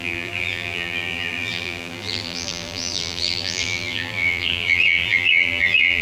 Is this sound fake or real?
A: fake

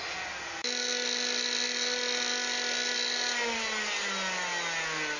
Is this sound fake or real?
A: real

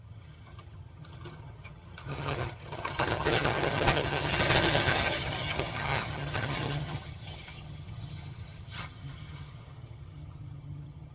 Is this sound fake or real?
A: fake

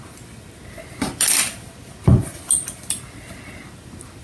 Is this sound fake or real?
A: real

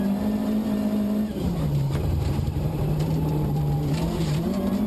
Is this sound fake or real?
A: fake